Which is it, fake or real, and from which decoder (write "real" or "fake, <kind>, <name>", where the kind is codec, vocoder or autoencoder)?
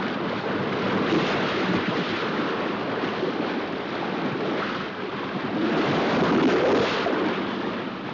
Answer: real